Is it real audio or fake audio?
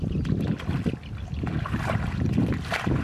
real